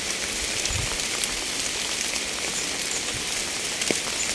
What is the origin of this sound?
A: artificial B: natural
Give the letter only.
B